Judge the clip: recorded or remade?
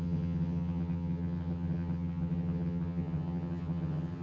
remade